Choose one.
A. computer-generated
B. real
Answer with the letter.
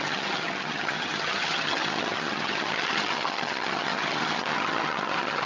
A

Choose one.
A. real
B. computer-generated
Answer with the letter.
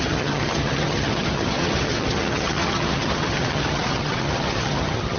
B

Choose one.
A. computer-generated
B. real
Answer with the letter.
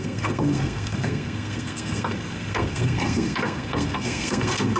A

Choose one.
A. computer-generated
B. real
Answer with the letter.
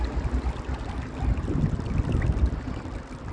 B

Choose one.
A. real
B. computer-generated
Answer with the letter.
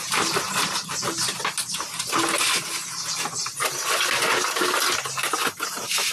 A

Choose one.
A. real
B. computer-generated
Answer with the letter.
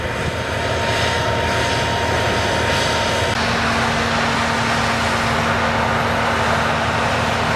A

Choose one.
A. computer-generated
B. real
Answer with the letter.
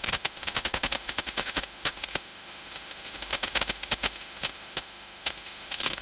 A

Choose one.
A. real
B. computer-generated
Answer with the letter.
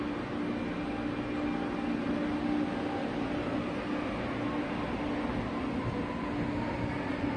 A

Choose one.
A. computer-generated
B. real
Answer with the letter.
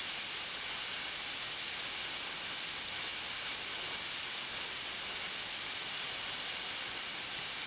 B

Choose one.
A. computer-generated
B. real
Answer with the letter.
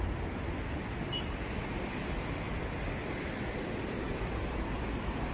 B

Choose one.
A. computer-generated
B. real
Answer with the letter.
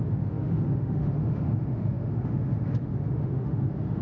A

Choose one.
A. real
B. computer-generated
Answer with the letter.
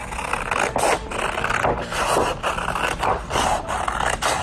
A